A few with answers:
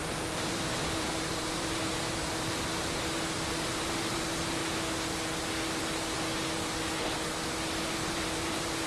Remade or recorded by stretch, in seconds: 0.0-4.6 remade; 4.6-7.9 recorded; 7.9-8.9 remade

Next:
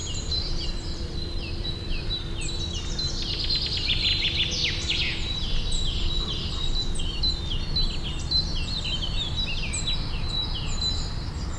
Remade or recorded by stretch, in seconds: 0.0-2.1 remade; 2.1-11.6 recorded